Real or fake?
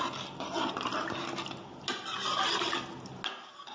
real